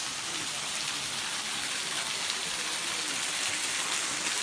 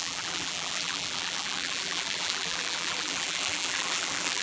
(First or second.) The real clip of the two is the first